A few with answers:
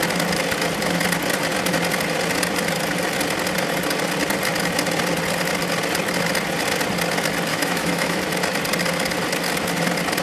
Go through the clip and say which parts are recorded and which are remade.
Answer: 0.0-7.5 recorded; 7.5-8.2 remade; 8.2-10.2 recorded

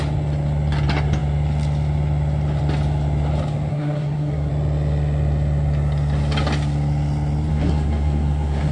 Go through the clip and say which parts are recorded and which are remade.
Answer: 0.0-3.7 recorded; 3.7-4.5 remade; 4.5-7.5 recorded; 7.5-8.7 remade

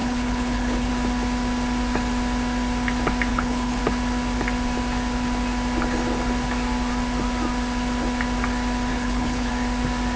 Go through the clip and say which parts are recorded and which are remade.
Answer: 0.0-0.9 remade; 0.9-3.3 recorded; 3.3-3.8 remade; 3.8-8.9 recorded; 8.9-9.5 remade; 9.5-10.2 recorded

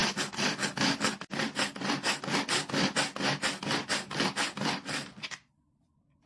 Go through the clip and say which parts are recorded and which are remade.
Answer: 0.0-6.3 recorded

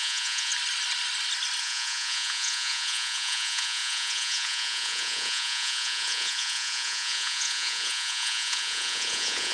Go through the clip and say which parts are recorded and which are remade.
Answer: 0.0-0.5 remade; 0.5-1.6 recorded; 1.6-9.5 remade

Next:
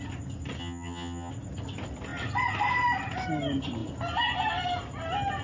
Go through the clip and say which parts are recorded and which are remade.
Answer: 0.0-0.6 recorded; 0.6-1.3 remade; 1.3-5.4 recorded

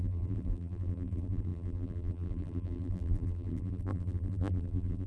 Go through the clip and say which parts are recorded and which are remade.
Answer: 0.0-5.1 remade

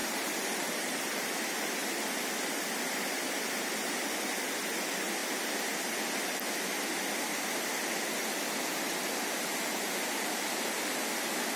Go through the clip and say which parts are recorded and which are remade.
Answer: 0.0-1.1 remade; 1.1-11.6 recorded